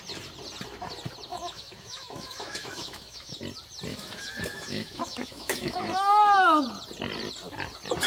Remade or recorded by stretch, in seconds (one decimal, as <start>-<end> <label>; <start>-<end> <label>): 0.0-1.3 recorded; 1.3-3.4 remade; 3.4-3.9 recorded; 3.9-6.6 remade; 6.6-8.1 recorded